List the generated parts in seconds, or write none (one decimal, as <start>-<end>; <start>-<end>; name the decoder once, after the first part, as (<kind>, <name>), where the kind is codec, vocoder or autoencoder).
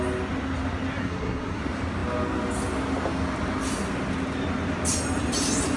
1.0-1.6 (codec, SNAC)